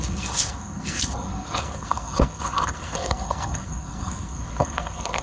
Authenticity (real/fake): fake